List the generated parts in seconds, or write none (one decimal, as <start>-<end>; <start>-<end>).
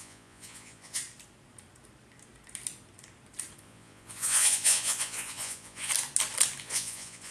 0.0-1.0; 3.6-5.9; 6.6-7.3